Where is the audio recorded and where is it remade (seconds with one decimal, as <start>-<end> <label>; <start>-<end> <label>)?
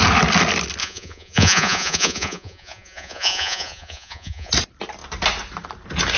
0.0-0.8 recorded; 0.8-4.5 remade; 4.5-6.2 recorded